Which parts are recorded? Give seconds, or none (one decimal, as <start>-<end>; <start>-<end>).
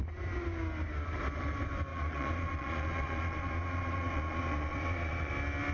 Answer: 0.0-1.9; 5.3-5.7